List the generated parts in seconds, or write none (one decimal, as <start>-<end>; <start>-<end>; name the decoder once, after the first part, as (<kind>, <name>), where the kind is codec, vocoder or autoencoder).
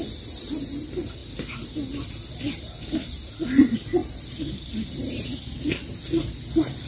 4.0-6.0 (vocoder, BigVGAN v2)